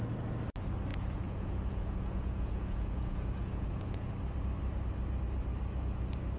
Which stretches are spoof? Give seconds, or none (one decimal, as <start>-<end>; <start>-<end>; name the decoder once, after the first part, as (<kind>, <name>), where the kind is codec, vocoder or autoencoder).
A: 0.9-4.1 (vocoder, Vocos)